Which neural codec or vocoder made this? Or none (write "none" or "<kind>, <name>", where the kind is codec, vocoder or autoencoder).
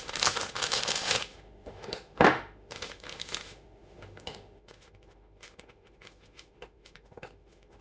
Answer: autoencoder, DAC-VAE